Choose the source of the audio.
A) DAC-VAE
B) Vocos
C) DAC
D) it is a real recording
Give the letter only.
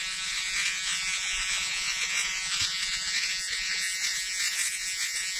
B